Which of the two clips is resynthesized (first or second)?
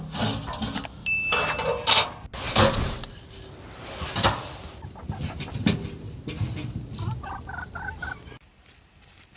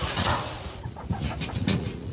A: second